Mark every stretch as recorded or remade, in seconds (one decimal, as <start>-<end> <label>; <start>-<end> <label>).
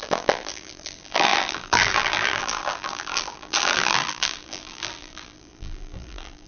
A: 0.0-6.5 remade